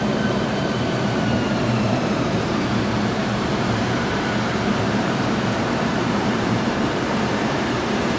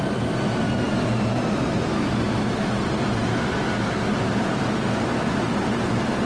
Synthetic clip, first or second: first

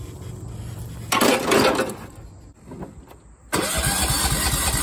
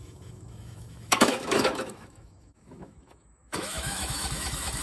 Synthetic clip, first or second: second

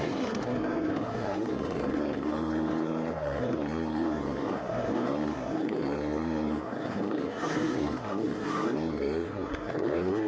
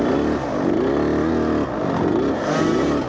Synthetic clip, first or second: first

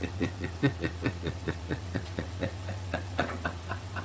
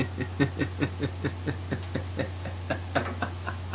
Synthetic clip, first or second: first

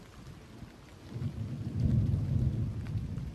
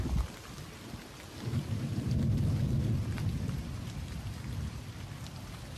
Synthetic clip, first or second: second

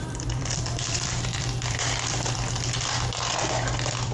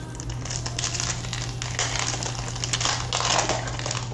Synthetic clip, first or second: first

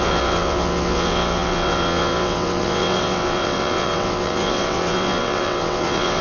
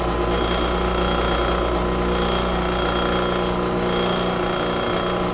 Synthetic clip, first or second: first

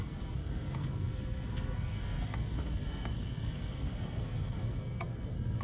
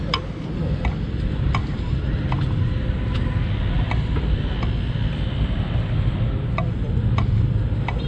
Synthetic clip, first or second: first